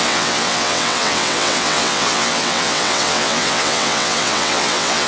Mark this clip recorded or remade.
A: remade